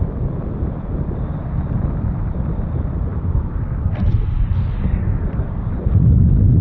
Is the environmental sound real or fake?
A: fake